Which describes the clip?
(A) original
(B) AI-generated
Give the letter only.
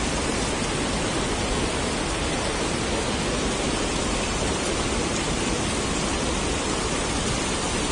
A